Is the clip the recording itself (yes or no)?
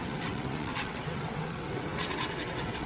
no